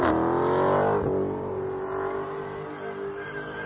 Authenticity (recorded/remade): recorded